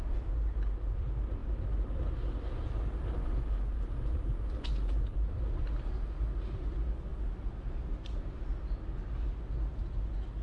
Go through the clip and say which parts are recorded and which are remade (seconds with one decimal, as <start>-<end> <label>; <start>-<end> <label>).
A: 0.0-10.4 recorded